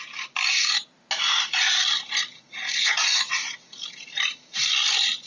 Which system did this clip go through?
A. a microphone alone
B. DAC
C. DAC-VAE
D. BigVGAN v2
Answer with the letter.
A